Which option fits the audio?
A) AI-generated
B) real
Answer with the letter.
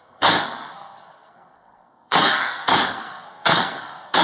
A